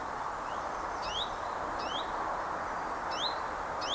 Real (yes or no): yes